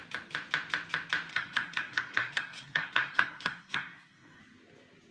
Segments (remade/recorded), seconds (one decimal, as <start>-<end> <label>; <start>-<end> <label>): 0.0-1.3 recorded; 1.3-4.4 remade; 4.4-5.1 recorded